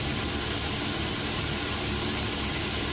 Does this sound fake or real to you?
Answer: real